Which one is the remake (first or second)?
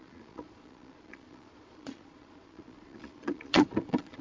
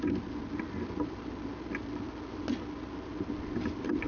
first